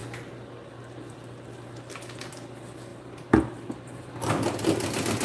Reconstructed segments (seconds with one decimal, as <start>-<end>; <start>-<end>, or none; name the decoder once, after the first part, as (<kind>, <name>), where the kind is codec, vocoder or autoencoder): 2.9-4.1 (vocoder, BigVGAN v2)